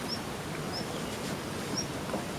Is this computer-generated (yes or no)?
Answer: no